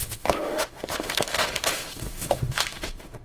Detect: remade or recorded remade